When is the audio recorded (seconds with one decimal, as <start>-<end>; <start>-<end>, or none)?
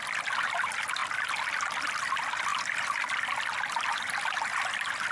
0.0-5.1